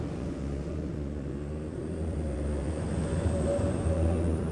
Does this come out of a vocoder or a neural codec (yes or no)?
yes